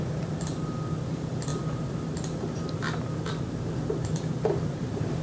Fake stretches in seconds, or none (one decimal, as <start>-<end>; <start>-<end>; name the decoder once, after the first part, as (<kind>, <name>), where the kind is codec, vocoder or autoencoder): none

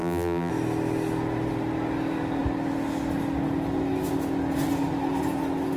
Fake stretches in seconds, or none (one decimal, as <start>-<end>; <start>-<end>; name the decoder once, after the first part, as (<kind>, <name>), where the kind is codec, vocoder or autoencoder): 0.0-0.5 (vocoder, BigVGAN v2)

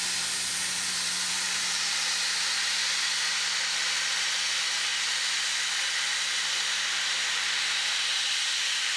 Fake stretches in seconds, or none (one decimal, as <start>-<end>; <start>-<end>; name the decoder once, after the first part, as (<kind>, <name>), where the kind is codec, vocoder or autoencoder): none